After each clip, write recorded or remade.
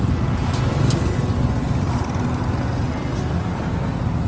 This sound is recorded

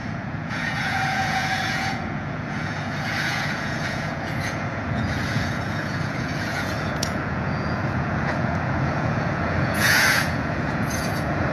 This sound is remade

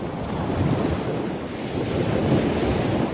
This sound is recorded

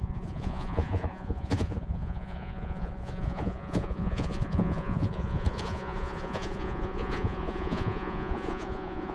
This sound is remade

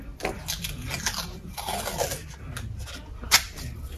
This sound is recorded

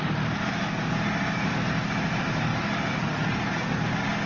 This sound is recorded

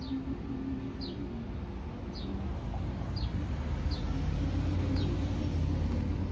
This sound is recorded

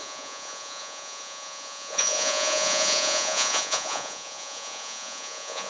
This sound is remade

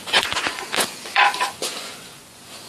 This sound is remade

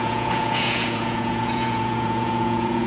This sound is remade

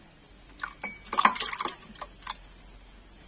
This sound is recorded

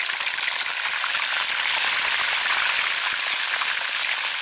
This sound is recorded